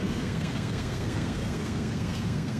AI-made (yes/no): yes